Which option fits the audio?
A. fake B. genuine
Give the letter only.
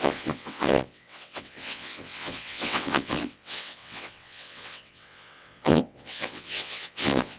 A